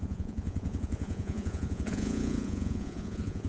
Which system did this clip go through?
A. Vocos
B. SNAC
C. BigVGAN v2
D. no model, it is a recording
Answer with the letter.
A